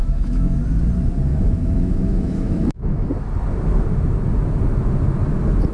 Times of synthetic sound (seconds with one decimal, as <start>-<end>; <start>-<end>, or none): 0.0-0.6; 1.3-3.1